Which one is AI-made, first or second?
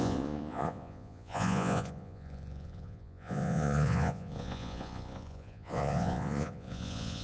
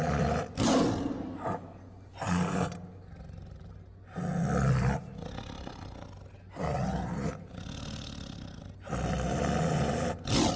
first